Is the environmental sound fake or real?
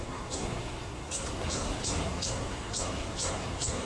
fake